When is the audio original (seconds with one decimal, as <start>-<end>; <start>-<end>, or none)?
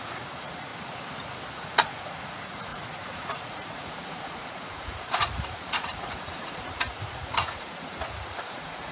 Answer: 0.7-1.5